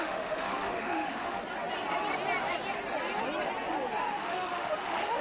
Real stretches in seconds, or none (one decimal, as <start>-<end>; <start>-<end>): 1.4-4.1